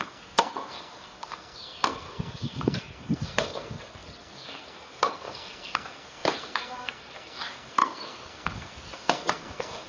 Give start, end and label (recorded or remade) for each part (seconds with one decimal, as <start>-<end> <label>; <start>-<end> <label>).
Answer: 0.0-9.9 remade